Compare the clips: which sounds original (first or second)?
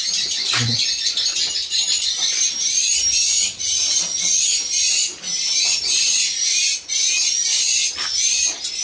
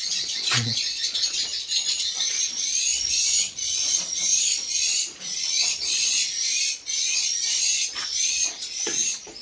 first